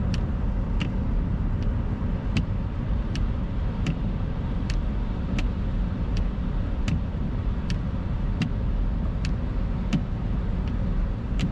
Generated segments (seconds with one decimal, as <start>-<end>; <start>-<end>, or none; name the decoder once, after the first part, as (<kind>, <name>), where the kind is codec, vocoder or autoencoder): 0.0-8.5 (vocoder, BigVGAN v2); 10.4-11.5